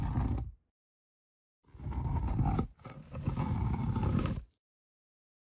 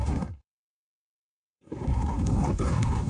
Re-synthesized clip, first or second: second